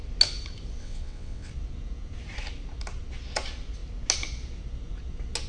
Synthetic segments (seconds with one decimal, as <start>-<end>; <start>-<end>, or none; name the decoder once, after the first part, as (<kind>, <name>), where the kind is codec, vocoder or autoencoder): 0.8-1.5 (vocoder, WaveNeXt)